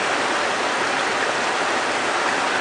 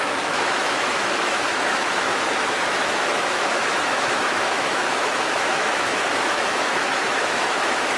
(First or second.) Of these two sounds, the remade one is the second